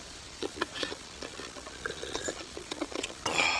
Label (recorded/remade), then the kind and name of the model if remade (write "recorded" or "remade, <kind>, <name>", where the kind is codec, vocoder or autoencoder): remade, vocoder, Vocos